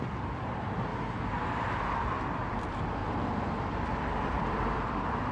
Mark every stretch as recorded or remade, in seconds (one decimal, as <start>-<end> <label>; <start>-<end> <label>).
0.0-0.9 remade; 0.9-2.2 recorded; 2.2-3.0 remade; 3.0-3.7 recorded; 3.7-5.3 remade